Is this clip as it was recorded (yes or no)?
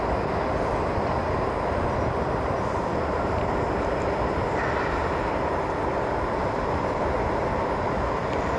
yes